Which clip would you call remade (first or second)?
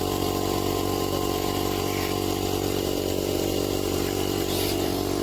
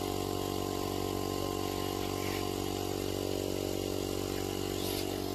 first